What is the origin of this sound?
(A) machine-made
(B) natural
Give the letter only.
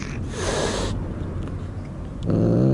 B